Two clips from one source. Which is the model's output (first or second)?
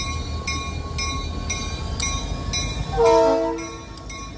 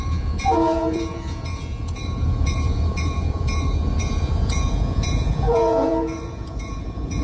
second